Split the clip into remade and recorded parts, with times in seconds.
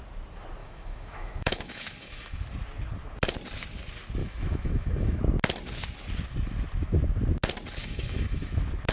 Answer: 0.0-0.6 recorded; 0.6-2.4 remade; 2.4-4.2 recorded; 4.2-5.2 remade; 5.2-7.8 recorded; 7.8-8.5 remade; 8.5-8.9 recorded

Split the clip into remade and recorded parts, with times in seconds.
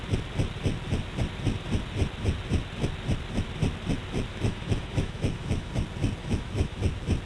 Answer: 0.0-4.3 recorded; 4.3-5.7 remade; 5.7-6.2 recorded; 6.2-6.8 remade; 6.8-7.3 recorded